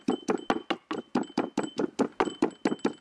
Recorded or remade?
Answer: recorded